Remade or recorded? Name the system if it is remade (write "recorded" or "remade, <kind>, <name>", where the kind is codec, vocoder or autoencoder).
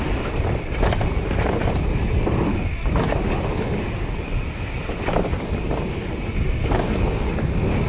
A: recorded